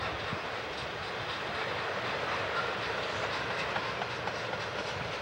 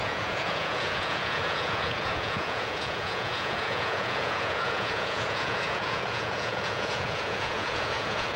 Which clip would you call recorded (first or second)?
first